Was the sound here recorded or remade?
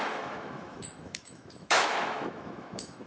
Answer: remade